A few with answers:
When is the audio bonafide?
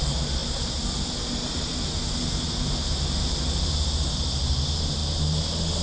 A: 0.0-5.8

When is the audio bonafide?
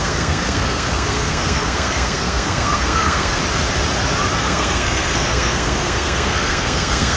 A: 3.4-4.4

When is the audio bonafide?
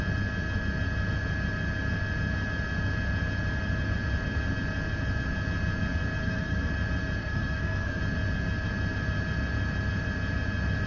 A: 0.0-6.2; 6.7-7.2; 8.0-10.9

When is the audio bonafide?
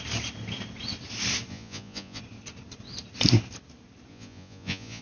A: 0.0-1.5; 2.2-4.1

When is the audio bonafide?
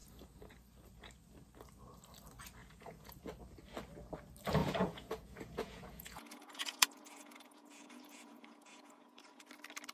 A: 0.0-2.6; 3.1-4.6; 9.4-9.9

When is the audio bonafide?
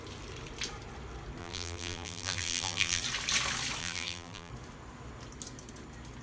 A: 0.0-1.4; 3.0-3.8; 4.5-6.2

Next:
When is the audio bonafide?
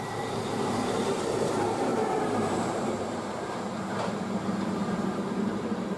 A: none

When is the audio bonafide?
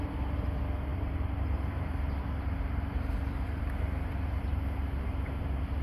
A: 0.0-0.9; 4.4-5.8